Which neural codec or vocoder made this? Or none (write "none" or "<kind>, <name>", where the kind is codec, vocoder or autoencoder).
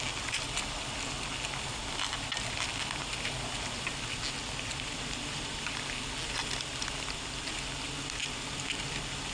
none